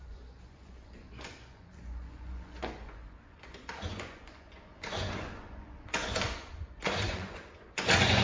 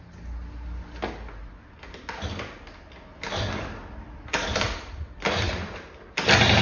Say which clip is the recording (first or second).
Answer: second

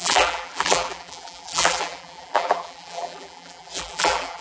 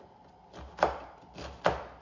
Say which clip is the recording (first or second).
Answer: second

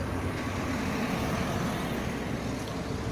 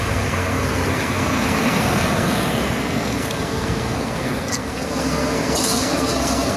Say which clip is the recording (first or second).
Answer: first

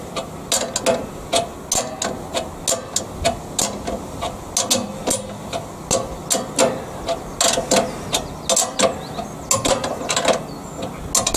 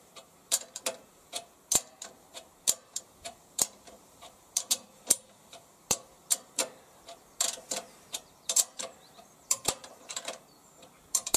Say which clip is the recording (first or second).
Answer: first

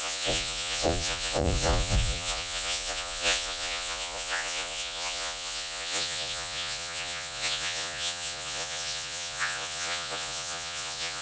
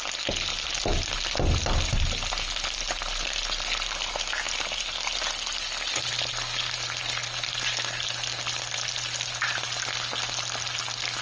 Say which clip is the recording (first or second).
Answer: second